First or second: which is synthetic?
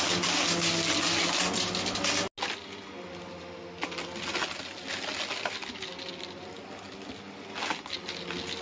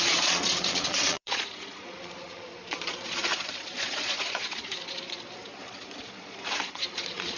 second